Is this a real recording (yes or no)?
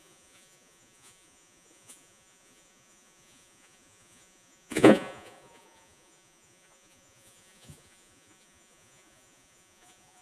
no